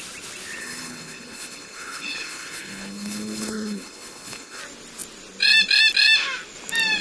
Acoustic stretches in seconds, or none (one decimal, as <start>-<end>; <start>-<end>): 0.0-0.6; 4.6-7.0